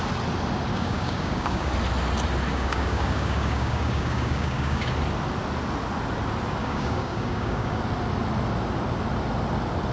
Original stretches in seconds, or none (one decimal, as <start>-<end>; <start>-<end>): 0.0-0.7; 1.7-2.5; 4.9-6.6; 7.8-9.9